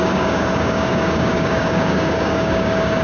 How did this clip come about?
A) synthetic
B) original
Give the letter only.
A